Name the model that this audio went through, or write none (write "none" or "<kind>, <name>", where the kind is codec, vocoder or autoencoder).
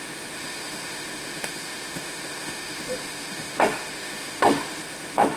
autoencoder, DAC-VAE